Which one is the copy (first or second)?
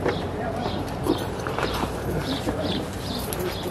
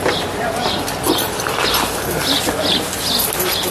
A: first